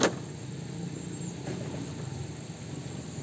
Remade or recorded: recorded